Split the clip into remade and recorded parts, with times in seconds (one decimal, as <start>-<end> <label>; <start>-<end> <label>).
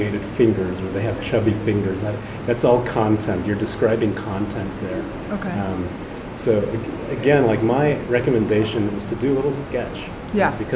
0.0-0.9 recorded; 0.9-1.5 remade; 1.5-10.8 recorded